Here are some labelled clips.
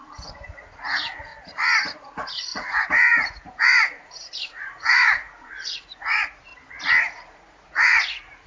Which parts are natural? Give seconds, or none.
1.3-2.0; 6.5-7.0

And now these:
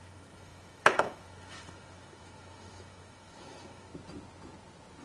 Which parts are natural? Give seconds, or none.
3.9-5.0

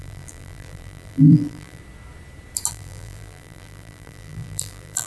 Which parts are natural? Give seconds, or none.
1.8-2.7

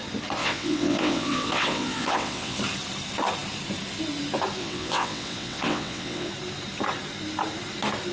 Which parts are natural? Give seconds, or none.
0.0-0.4; 2.6-4.6; 6.3-8.1

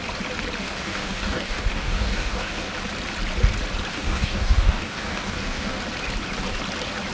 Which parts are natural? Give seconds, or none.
0.0-0.6; 2.7-3.9; 5.8-7.1